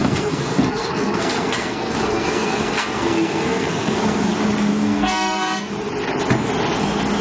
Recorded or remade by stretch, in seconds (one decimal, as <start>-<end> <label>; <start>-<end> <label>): 0.0-4.3 remade; 4.3-4.7 recorded; 4.7-5.7 remade; 5.7-7.2 recorded